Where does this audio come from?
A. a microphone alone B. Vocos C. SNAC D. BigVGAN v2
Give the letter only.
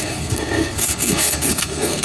C